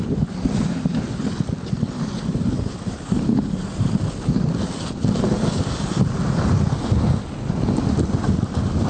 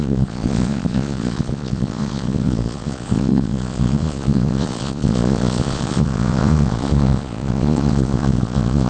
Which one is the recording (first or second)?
first